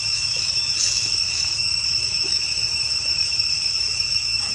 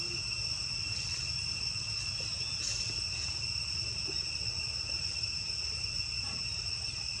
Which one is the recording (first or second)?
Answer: second